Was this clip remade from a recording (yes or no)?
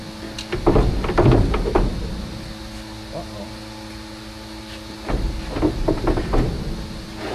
no